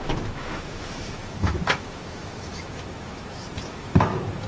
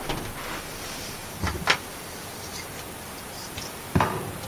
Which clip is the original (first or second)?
second